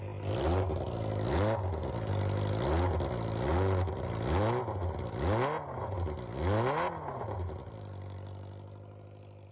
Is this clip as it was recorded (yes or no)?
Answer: yes